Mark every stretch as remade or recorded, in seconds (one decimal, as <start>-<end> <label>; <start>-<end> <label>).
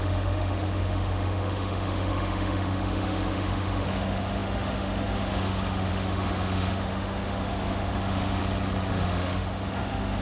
0.0-8.4 remade; 8.4-8.9 recorded; 8.9-10.2 remade